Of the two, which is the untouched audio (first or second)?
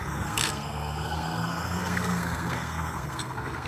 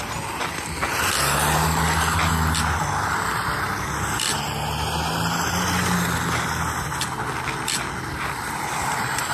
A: second